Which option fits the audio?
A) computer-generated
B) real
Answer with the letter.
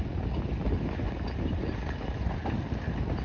B